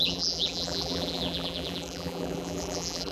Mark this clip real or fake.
fake